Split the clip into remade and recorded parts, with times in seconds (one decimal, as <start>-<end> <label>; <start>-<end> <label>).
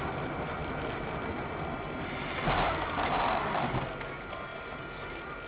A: 0.0-0.6 recorded; 0.6-1.3 remade; 1.3-4.5 recorded; 4.5-5.5 remade